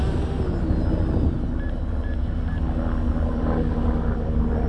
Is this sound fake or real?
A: real